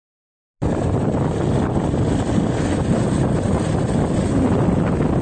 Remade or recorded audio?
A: recorded